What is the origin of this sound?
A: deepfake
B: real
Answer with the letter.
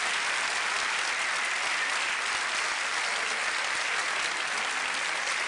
B